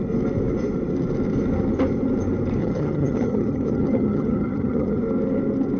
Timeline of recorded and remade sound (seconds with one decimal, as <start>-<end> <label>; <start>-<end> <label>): 0.0-2.6 recorded; 2.6-5.0 remade; 5.0-5.8 recorded